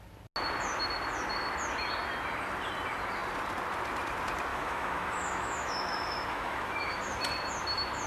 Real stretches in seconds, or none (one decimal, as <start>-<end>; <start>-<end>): 0.0-4.5; 7.0-8.1